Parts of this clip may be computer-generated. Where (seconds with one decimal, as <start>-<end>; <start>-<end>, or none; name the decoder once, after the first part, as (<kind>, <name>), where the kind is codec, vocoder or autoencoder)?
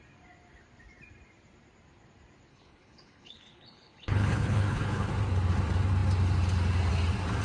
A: 2.5-5.1 (codec, HILCodec)